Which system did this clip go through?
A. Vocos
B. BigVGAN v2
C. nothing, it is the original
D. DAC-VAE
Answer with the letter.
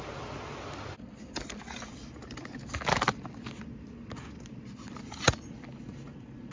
C